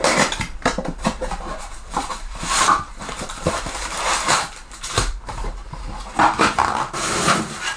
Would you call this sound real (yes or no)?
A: no